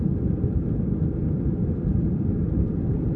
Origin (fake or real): real